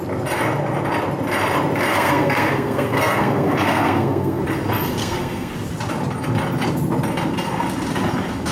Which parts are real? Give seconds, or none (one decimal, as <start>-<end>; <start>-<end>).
0.0-1.9; 4.4-5.0; 5.5-8.5